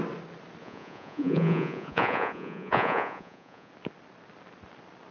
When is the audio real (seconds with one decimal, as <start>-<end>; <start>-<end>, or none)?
0.0-0.6; 3.7-5.1